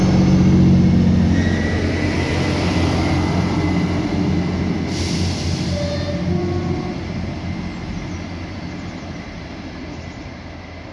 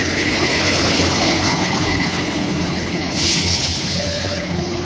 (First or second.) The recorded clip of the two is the first